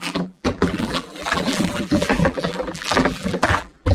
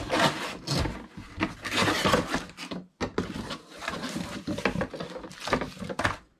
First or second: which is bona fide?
second